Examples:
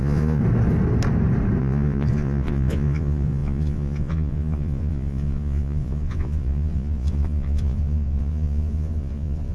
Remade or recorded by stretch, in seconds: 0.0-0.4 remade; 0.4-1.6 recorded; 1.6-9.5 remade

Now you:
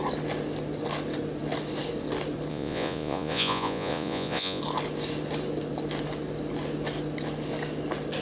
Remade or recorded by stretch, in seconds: 0.0-2.5 recorded; 2.5-4.6 remade; 4.6-8.2 recorded

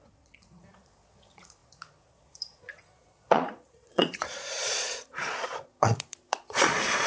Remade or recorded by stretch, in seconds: 0.0-7.1 remade

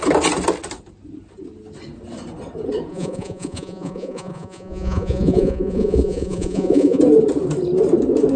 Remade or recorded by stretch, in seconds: 0.0-2.9 recorded; 2.9-7.0 remade; 7.0-8.4 recorded

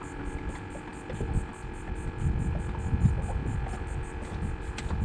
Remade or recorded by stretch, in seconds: 0.0-5.0 recorded

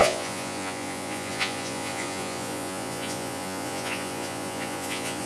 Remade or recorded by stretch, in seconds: 0.0-5.2 remade

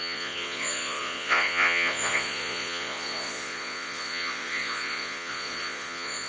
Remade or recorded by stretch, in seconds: 0.0-6.3 remade

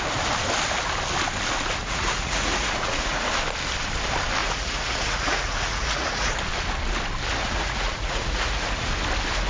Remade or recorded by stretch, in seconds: 0.0-1.8 recorded; 1.8-3.3 remade; 3.3-4.4 recorded; 4.4-6.3 remade; 6.3-7.4 recorded; 7.4-8.9 remade; 8.9-9.5 recorded